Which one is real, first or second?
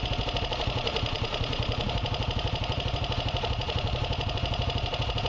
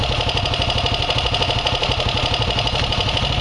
second